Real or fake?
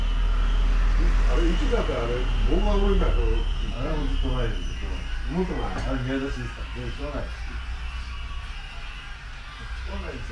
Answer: real